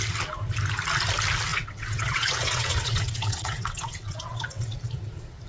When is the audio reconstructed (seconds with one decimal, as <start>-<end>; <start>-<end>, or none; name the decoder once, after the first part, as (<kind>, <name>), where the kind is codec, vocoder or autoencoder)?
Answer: 1.5-4.8 (vocoder, WaveNeXt)